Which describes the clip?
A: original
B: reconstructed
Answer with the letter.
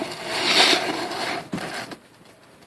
A